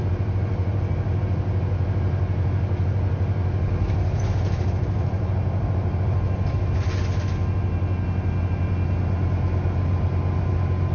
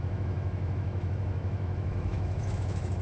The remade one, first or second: second